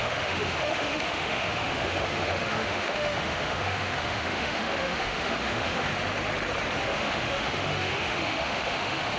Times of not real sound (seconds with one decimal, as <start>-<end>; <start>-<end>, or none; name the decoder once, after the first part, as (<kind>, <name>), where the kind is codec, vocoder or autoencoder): 0.0-5.9 (autoencoder, DAC-VAE); 6.8-9.2